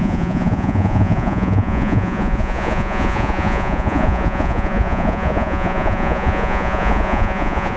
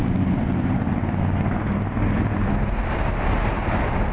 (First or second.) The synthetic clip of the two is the first